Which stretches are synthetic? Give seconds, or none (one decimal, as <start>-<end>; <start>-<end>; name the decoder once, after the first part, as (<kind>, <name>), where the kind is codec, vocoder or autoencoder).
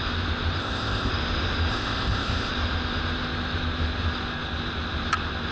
0.6-1.1 (codec, ZipCodec); 1.7-2.5